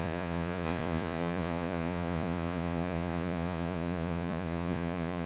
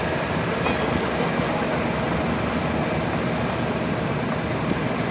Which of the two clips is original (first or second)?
second